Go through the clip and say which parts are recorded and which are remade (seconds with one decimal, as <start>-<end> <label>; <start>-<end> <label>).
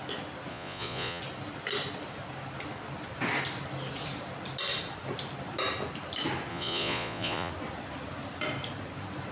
0.0-0.5 recorded; 0.5-1.2 remade; 1.2-6.5 recorded; 6.5-7.5 remade; 7.5-9.3 recorded